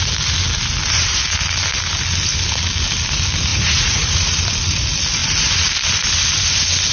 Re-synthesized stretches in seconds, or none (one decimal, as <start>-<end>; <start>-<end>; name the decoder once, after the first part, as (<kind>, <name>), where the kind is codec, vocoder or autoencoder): 3.5-4.4 (vocoder, Vocos)